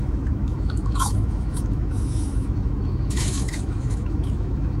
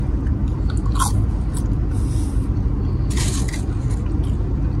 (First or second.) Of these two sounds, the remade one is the first